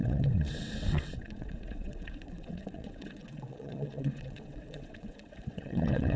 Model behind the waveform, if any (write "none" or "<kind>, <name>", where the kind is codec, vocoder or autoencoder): vocoder, WaveNeXt